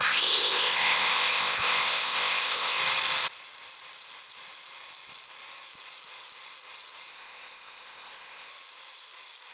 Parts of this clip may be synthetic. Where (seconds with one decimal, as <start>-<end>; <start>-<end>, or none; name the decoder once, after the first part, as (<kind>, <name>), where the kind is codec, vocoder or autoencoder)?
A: 0.0-2.8 (codec, ZipCodec); 7.1-8.5

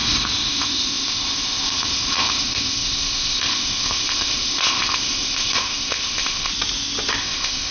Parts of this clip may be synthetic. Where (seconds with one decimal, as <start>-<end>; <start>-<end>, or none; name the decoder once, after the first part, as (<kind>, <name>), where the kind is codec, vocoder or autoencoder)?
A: 0.0-6.5 (codec, ZipCodec); 7.2-7.7